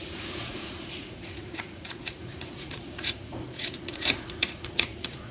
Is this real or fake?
fake